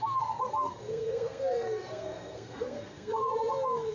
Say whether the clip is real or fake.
fake